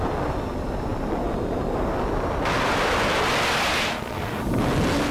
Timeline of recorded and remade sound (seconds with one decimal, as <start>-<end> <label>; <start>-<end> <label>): 0.0-5.1 recorded